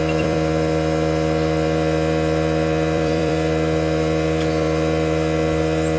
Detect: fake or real fake